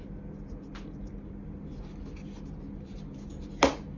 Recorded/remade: recorded